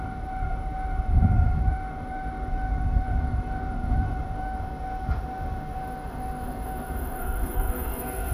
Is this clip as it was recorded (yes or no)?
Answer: no